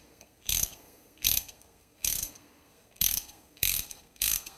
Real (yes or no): no